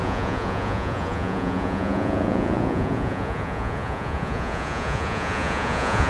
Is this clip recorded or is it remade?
remade